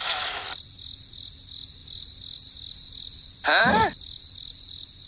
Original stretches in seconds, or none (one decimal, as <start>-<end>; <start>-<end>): 0.0-5.1